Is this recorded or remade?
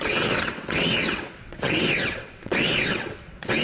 remade